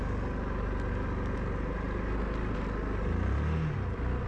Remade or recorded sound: recorded